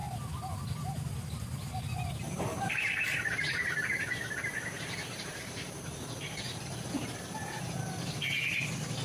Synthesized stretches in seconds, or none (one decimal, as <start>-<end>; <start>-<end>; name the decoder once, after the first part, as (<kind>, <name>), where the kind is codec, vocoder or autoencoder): 2.5-7.2 (vocoder, BigVGAN v2)